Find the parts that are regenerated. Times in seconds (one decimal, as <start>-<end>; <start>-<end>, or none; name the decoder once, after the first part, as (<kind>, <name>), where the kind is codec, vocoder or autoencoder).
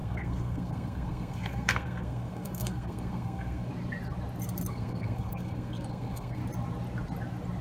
0.0-3.7 (codec, SNAC); 4.7-6.4